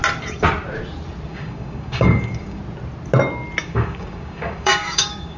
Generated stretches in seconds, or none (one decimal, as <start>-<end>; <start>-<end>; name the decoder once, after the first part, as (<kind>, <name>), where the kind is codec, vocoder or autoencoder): 1.3-2.6 (codec, DAC); 3.6-5.4